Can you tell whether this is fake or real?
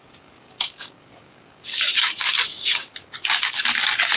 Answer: fake